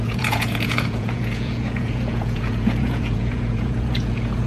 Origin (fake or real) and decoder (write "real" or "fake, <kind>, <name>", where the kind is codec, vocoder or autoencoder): fake, vocoder, Vocos